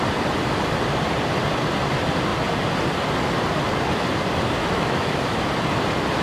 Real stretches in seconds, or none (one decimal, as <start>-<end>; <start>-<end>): 0.0-4.6; 5.5-6.2